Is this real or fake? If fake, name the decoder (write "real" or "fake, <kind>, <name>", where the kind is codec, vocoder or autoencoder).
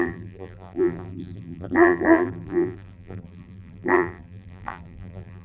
fake, vocoder, BigVGAN v2